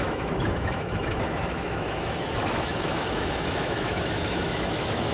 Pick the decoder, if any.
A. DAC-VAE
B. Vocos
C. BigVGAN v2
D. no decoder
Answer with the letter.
A